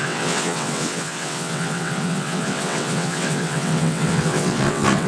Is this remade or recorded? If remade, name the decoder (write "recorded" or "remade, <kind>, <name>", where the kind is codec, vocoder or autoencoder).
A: remade, vocoder, WaveNeXt